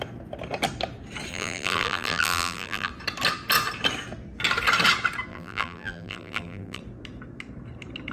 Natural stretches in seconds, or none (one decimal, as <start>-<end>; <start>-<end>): 0.0-1.3; 2.9-5.3; 6.8-8.1